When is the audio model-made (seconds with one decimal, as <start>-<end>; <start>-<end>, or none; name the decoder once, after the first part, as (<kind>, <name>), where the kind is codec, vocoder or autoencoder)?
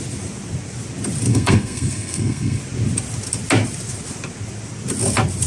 1.3-2.6 (codec, SNAC)